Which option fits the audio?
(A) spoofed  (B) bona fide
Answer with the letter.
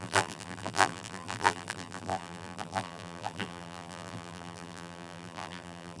A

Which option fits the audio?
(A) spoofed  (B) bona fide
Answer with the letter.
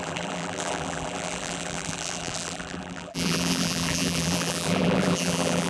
A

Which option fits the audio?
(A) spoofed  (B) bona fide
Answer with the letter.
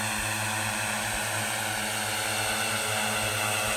B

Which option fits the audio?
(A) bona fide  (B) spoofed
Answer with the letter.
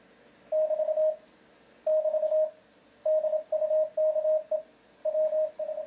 A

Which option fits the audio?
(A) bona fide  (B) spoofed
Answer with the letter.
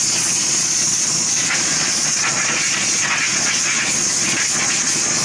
B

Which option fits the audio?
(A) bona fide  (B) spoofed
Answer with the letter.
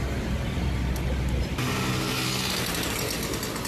A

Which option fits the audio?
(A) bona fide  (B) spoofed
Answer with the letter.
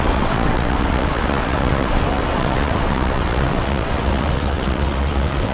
B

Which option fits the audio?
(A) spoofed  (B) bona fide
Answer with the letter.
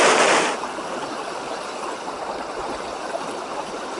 B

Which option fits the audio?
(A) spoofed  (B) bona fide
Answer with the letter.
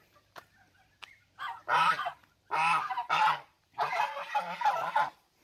A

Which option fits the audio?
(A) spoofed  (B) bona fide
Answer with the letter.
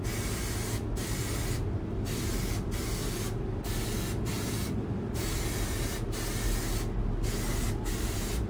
B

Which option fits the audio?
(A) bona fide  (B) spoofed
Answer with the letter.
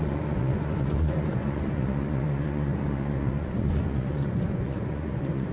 B